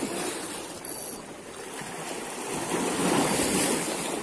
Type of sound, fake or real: real